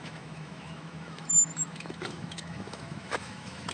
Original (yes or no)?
no